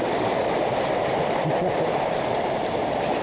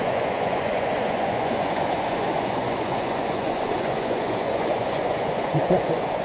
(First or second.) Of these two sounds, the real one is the first